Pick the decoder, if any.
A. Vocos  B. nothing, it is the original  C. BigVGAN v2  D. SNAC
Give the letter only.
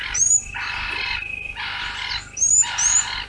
B